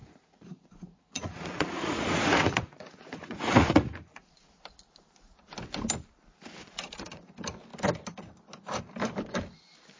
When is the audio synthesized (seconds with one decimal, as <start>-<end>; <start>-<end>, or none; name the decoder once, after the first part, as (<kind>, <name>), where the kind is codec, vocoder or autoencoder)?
0.0-4.5 (vocoder, Vocos); 6.6-7.3